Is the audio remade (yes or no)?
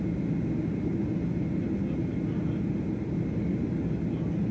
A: no